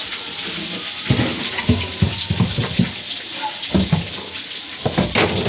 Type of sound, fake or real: real